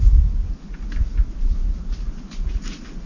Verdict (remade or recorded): recorded